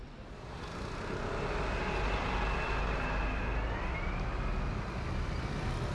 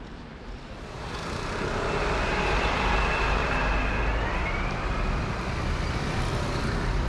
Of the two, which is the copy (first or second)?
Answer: second